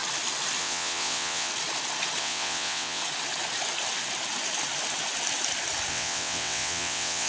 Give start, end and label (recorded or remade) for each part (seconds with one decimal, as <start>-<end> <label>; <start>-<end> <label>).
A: 0.0-0.6 recorded; 0.6-1.5 remade; 1.5-2.2 recorded; 2.2-3.0 remade; 3.0-5.9 recorded; 5.9-7.3 remade